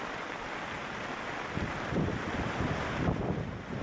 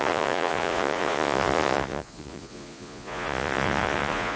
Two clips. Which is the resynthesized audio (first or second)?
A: second